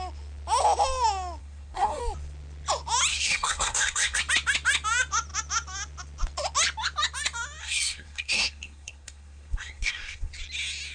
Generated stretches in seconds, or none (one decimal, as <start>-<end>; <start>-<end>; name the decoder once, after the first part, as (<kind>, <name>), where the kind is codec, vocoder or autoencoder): 1.4-2.0 (codec, SNAC); 3.1-4.2; 7.6-10.3